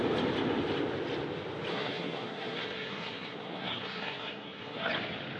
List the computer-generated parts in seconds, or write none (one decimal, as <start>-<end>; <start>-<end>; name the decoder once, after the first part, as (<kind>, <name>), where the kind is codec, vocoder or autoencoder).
1.7-4.9 (codec, SNAC)